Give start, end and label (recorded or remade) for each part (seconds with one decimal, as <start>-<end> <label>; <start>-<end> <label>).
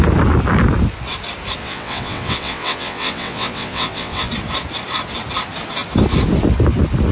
0.0-1.6 recorded; 1.6-4.3 remade; 4.3-7.1 recorded